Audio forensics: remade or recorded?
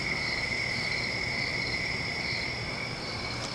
remade